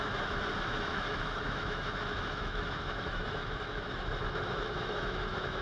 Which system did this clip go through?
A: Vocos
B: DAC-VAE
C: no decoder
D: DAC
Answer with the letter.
B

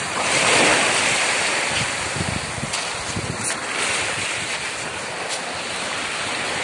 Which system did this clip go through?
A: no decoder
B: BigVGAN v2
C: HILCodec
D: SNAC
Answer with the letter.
B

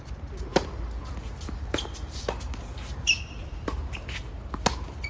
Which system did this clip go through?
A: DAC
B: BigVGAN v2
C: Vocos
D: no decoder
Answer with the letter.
D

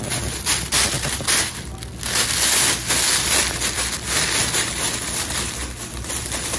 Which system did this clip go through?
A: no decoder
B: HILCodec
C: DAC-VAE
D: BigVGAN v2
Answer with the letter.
A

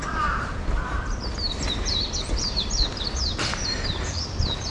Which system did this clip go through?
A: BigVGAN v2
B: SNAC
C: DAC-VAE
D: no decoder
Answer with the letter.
A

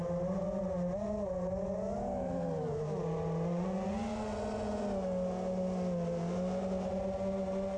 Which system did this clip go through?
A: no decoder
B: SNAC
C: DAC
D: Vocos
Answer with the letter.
A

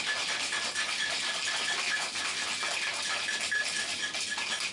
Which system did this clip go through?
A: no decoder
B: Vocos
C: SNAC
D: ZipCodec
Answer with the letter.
A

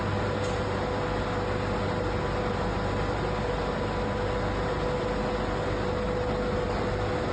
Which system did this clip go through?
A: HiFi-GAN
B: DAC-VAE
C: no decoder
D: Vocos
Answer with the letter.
C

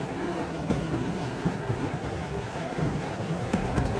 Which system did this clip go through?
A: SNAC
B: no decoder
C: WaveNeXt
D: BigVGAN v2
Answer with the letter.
A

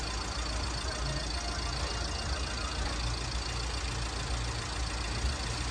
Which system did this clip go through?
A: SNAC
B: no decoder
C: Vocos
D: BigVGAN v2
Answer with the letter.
B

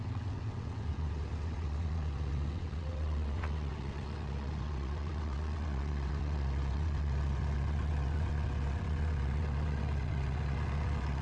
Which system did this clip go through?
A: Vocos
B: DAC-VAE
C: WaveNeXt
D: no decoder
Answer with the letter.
C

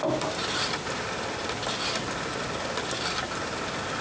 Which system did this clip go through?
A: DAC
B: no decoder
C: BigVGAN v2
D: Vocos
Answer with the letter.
B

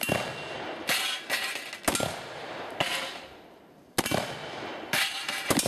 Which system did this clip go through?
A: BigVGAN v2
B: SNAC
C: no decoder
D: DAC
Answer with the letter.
C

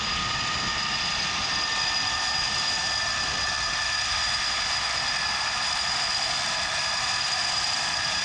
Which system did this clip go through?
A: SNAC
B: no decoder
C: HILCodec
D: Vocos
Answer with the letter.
B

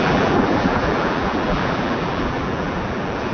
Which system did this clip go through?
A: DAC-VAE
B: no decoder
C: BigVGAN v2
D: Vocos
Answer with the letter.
C